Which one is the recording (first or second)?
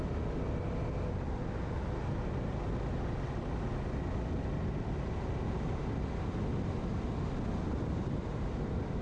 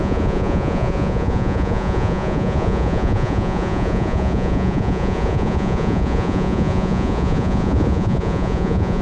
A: first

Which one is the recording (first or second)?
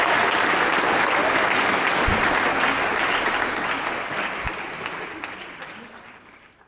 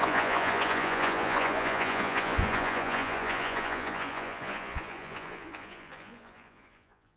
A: first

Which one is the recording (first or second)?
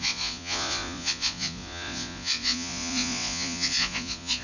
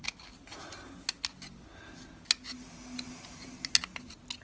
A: second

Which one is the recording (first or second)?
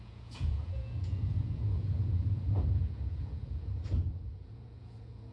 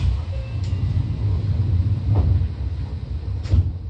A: second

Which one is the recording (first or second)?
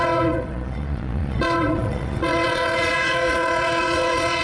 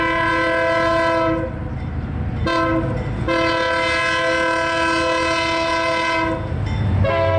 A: second